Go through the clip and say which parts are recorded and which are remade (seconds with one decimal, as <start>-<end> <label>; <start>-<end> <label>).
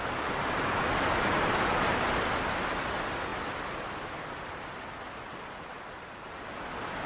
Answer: 0.0-7.1 recorded